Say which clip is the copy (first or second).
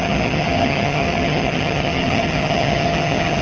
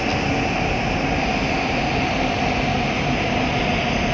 first